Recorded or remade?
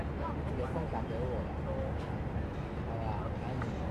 recorded